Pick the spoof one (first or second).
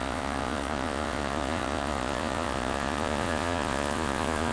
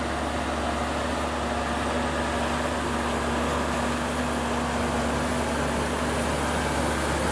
first